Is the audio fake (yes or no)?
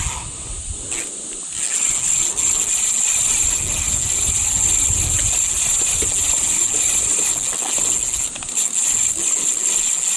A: no